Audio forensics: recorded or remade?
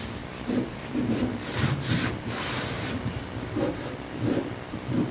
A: recorded